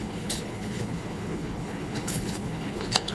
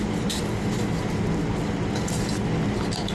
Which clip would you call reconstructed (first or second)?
first